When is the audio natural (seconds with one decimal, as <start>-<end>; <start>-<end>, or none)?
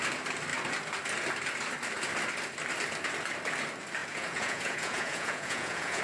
0.0-4.0